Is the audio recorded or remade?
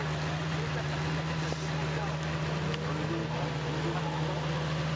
recorded